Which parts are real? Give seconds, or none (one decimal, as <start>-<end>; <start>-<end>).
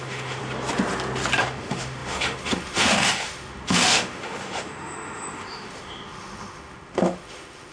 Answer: 0.4-1.4